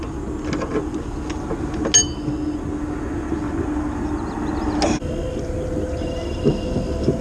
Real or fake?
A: real